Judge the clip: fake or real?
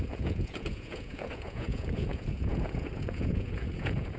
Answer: fake